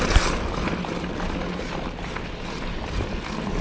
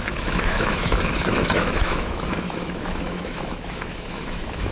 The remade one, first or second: second